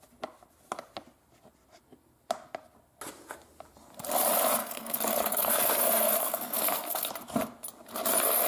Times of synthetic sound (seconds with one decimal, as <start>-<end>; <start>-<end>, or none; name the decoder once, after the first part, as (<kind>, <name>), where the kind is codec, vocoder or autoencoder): 4.6-7.1 (codec, SNAC)